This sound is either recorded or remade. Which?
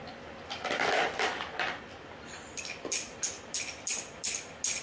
recorded